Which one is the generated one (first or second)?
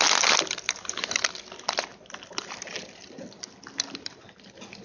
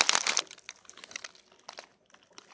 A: first